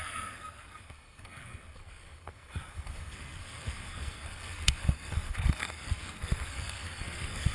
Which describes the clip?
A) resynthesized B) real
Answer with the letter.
A